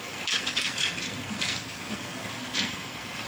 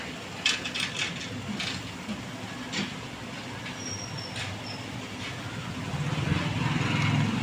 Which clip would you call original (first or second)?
second